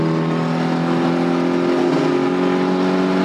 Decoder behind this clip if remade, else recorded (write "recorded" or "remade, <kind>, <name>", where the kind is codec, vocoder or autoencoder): recorded